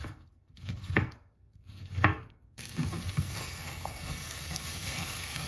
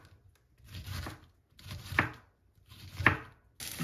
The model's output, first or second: first